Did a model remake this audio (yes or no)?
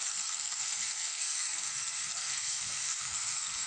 yes